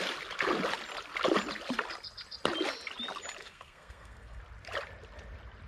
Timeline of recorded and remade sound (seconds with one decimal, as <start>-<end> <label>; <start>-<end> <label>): 0.0-3.4 recorded; 3.4-4.4 remade; 4.4-5.7 recorded